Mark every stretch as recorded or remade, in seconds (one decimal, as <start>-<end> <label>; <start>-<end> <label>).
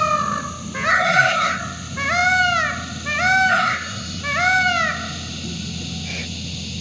0.0-0.9 recorded; 0.9-1.6 remade; 1.6-3.5 recorded; 3.5-4.2 remade; 4.2-6.8 recorded